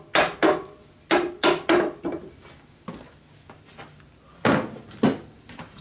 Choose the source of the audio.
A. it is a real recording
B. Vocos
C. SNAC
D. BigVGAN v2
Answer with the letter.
A